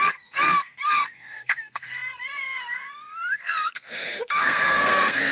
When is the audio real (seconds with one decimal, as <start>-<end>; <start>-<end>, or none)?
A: none